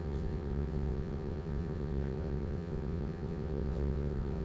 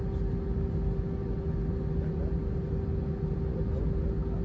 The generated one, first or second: first